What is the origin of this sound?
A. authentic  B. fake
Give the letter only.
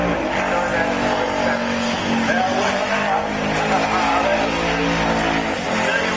A